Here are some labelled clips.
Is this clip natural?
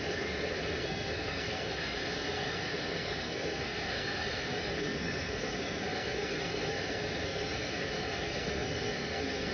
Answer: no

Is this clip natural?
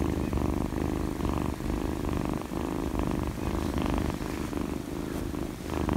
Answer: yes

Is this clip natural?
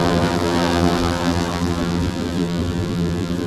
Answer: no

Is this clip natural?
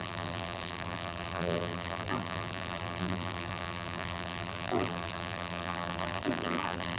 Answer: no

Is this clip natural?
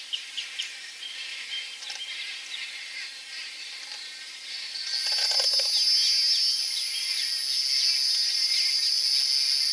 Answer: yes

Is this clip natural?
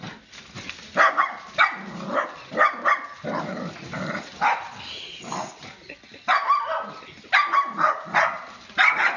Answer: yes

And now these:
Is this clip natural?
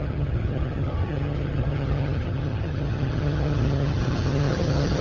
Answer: no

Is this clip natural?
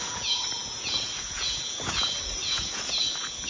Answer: no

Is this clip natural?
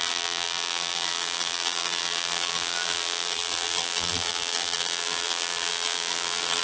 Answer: no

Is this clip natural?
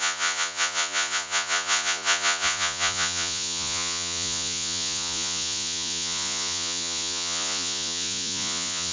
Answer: no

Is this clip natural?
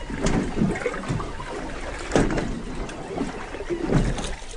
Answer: yes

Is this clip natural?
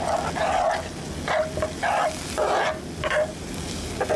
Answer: yes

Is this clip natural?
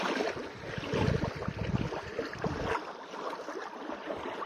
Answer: yes